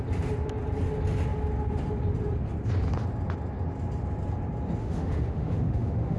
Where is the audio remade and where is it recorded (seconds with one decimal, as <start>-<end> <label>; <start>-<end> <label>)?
0.0-4.8 recorded; 4.8-6.2 remade